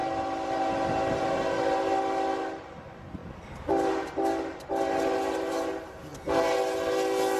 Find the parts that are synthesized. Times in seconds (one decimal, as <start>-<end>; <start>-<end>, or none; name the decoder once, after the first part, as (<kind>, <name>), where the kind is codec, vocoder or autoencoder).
none